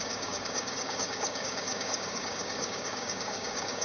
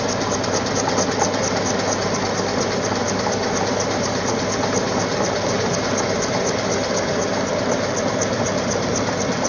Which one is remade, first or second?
first